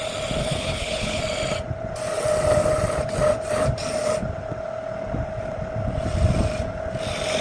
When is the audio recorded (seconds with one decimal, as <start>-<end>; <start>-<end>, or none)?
0.0-0.4; 1.2-7.4